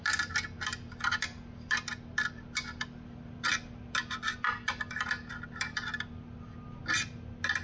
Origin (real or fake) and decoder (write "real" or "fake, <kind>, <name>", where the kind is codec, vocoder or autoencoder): real